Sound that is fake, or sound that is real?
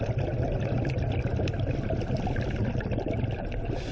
real